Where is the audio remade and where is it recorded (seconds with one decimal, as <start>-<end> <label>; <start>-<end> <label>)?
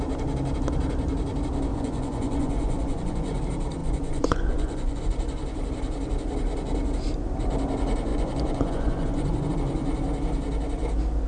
0.0-1.7 recorded; 1.7-3.4 remade; 3.4-3.8 recorded; 3.8-5.0 remade; 5.0-8.1 recorded; 8.1-9.5 remade; 9.5-11.3 recorded